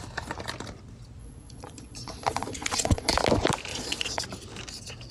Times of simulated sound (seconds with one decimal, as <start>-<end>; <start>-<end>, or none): 1.2-3.1; 3.7-4.2